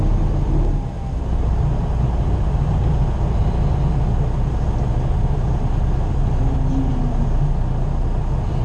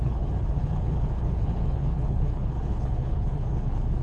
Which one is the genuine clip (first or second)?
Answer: first